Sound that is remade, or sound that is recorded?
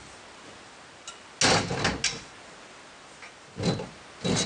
recorded